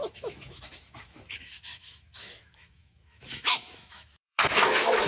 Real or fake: fake